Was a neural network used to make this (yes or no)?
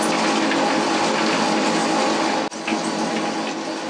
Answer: no